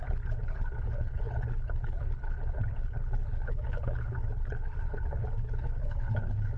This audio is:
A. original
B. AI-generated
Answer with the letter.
B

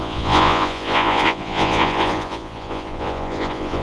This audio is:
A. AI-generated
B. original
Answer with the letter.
A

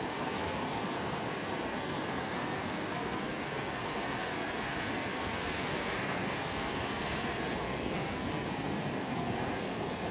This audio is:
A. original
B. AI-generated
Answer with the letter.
B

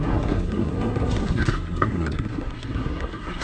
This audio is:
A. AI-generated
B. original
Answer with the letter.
A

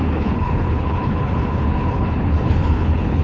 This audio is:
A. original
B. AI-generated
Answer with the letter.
B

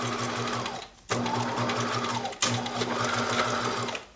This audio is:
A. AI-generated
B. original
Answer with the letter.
B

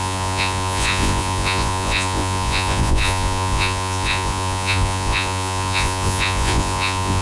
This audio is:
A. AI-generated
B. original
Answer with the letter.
A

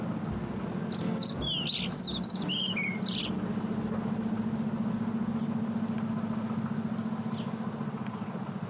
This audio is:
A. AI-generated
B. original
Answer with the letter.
B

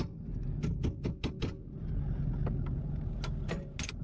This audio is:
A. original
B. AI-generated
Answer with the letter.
A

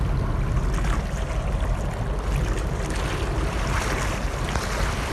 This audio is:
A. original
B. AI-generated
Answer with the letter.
A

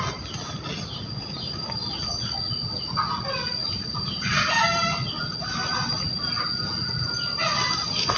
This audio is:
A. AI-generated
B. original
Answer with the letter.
B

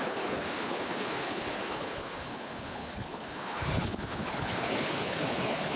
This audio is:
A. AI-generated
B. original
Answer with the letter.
A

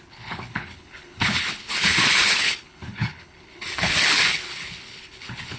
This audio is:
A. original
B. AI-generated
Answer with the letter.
B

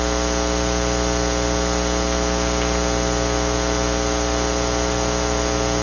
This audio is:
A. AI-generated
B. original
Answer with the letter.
B